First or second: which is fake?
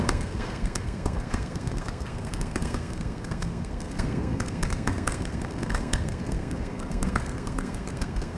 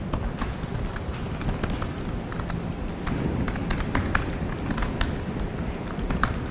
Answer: first